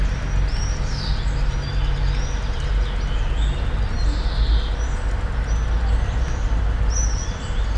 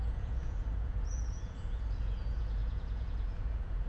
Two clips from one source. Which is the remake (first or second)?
second